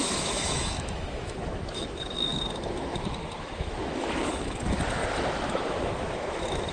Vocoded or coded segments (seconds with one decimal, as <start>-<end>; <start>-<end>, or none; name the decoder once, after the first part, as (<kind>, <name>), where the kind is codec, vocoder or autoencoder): 0.0-6.7 (autoencoder, DAC-VAE)